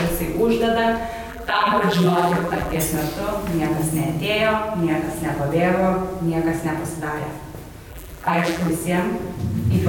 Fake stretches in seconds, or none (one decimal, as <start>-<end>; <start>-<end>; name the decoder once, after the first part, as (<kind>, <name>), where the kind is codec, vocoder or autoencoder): 1.3-2.8 (vocoder, BigVGAN v2); 7.9-8.7